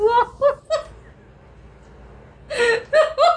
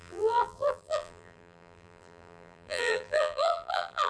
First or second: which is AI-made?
second